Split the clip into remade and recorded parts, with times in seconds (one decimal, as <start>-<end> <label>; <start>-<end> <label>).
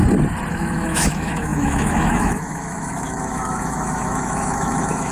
0.0-0.5 recorded; 0.5-5.1 remade